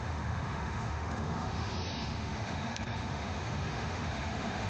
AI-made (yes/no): yes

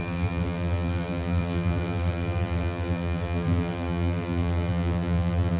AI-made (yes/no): yes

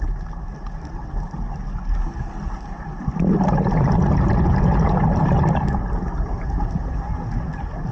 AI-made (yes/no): no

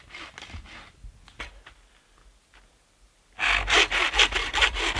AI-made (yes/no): no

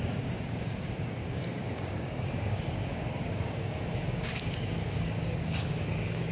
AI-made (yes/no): yes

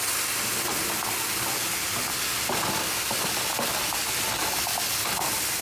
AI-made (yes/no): no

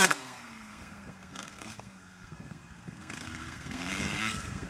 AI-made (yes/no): yes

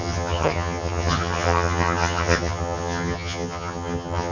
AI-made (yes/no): yes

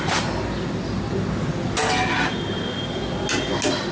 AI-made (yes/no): no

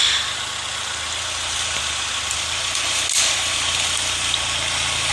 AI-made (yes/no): no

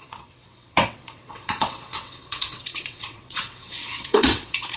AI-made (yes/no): yes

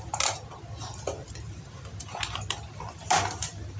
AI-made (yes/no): no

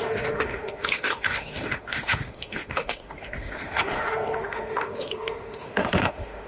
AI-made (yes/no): yes